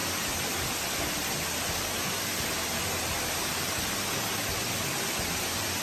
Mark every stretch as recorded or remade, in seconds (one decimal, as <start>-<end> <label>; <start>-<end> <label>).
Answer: 0.0-5.8 recorded